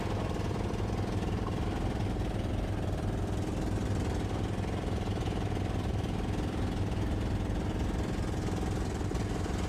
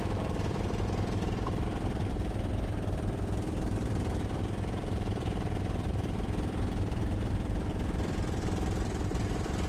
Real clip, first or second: first